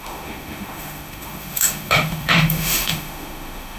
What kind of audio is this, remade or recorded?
remade